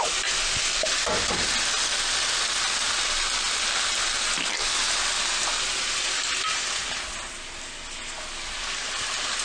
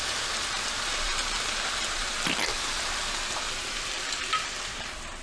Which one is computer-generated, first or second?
second